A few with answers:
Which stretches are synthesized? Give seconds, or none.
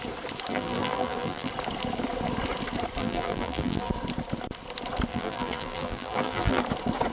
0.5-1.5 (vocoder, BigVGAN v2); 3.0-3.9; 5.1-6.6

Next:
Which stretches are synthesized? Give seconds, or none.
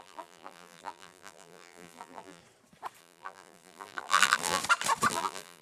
0.0-2.4 (vocoder, BigVGAN v2); 3.0-4.6; 5.1-5.6